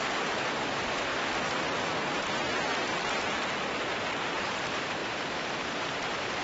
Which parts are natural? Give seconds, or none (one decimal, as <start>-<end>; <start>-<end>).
2.9-4.2